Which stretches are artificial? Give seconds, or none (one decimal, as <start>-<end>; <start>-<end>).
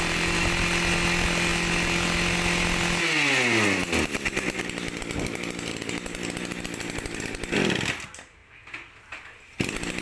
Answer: none